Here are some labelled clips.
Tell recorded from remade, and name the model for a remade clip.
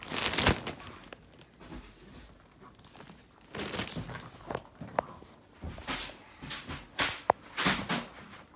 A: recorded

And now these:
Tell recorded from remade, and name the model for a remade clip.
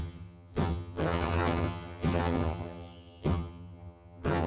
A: remade, vocoder, HiFi-GAN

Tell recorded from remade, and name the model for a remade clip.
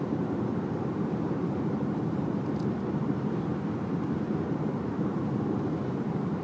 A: remade, vocoder, BigVGAN v2